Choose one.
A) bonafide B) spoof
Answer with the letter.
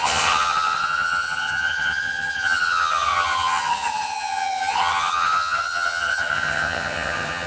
B